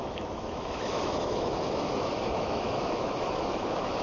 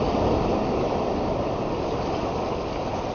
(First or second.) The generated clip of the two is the first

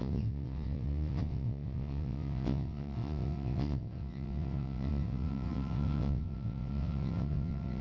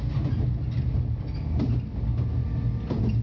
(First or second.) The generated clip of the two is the first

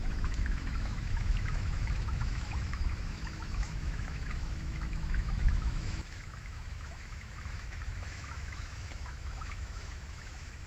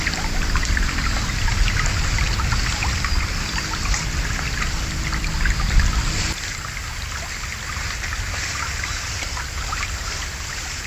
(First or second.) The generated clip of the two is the first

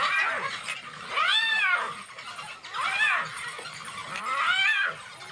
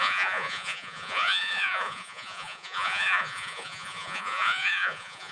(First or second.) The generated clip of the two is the second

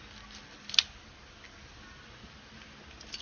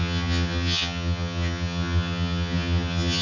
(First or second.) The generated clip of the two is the second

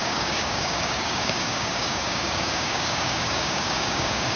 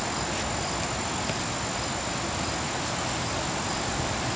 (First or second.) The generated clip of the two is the first